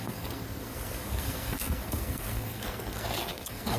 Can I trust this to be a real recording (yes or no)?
no